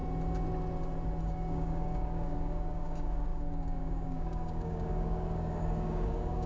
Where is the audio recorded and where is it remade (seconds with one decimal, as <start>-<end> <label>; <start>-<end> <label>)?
0.0-1.2 recorded; 1.2-6.5 remade